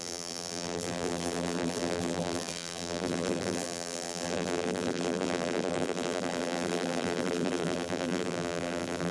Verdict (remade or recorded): remade